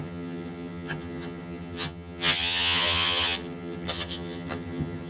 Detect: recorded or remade remade